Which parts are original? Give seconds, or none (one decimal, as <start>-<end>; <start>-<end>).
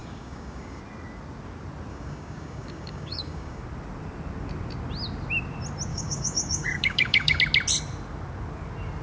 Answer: 0.8-1.9; 3.6-5.9; 7.4-9.0